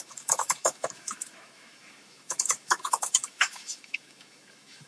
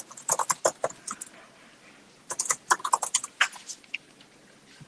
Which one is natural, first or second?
second